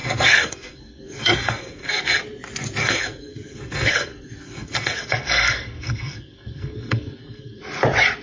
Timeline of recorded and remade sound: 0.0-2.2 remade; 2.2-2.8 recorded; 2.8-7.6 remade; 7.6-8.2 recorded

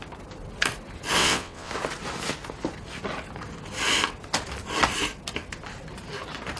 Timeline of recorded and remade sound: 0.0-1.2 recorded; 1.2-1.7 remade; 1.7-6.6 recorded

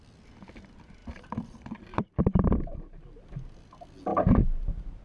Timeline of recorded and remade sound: 0.0-1.0 recorded; 1.0-3.3 remade; 3.3-4.1 recorded; 4.1-5.0 remade

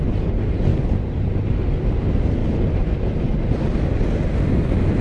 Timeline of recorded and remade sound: 0.0-5.0 recorded

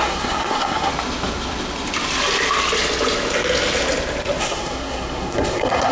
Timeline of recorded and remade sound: 0.0-0.9 remade; 0.9-4.4 recorded; 4.4-5.9 remade

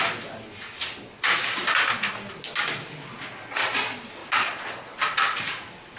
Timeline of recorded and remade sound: 0.0-4.2 recorded; 4.2-5.0 remade; 5.0-6.0 recorded